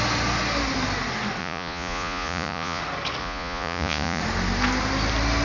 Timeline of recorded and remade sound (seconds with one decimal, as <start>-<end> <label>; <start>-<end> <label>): 0.0-1.4 recorded; 1.4-2.8 remade; 2.8-3.2 recorded; 3.2-4.2 remade; 4.2-5.4 recorded